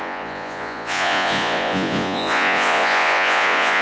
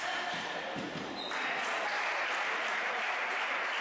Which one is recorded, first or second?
second